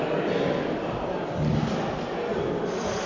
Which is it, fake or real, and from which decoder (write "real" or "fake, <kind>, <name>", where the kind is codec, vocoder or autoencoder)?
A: real